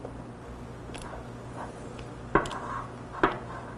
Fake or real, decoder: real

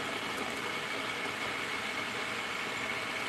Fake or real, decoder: real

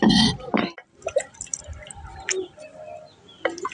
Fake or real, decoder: real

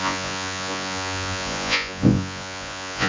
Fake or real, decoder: fake, vocoder, Vocos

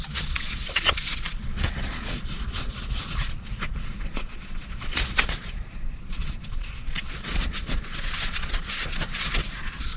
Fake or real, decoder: fake, vocoder, Vocos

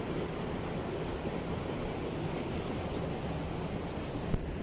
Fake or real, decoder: real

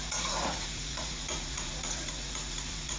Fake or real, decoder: fake, vocoder, Vocos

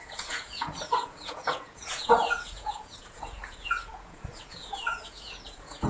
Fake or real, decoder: fake, vocoder, Vocos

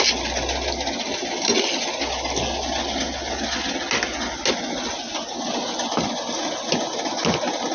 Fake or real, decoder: real